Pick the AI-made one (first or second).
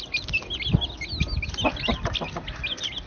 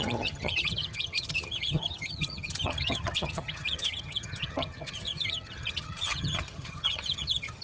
second